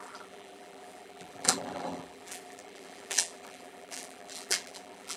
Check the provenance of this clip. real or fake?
fake